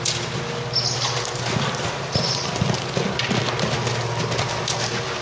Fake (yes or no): no